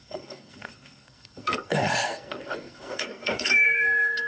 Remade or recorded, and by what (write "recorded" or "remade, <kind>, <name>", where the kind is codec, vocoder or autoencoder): remade, codec, SNAC